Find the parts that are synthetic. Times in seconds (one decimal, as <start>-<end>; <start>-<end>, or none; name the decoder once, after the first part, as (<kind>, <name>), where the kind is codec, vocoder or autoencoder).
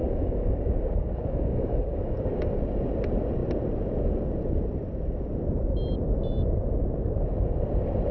0.0-2.6 (codec, DAC)